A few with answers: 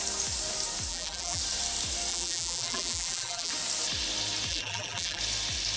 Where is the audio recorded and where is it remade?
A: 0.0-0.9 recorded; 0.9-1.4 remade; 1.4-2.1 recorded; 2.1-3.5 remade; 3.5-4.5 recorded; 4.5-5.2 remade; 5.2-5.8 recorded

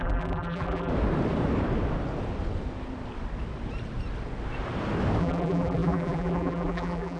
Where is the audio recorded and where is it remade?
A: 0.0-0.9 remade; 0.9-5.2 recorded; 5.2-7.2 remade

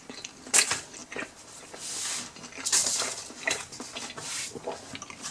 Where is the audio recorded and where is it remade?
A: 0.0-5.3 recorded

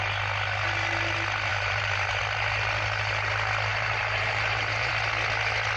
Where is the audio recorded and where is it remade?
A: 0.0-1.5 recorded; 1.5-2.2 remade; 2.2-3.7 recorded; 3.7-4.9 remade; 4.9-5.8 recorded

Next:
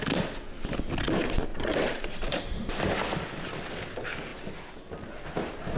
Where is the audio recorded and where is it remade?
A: 0.0-1.5 recorded; 1.5-2.8 remade; 2.8-5.8 recorded

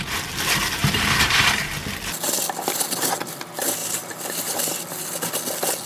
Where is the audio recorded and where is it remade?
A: 0.0-0.8 recorded; 0.8-1.7 remade; 1.7-3.8 recorded; 3.8-4.6 remade; 4.6-5.9 recorded

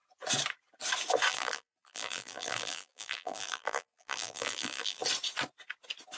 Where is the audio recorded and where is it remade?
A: 0.0-1.3 recorded; 1.3-5.0 remade; 5.0-6.2 recorded

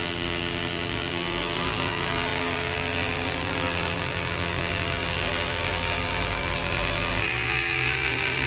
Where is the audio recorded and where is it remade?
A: 0.0-8.5 remade